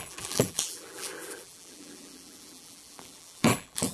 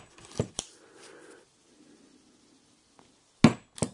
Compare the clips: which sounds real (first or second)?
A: second